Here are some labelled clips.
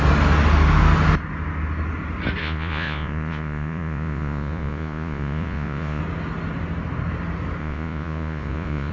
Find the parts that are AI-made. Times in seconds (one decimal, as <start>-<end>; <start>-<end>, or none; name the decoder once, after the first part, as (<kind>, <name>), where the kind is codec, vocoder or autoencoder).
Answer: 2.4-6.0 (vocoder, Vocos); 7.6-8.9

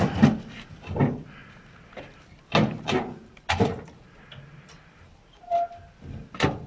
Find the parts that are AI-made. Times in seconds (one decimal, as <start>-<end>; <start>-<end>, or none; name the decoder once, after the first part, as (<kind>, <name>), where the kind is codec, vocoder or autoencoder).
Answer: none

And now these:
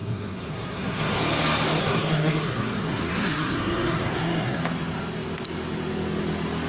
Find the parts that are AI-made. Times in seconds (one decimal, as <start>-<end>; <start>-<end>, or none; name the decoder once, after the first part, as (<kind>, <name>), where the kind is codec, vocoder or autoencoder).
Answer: 0.0-1.2 (codec, SNAC); 1.8-4.6

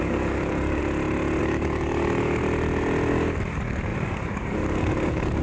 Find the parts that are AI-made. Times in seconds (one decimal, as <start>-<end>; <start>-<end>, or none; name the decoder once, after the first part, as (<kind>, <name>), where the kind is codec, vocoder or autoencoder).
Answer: 0.0-0.8 (codec, DAC); 1.4-2.4; 3.1-5.4